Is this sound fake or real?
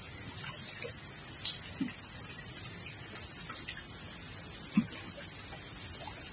real